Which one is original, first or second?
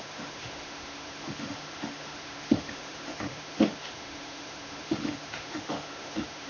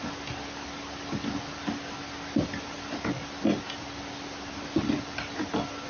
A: second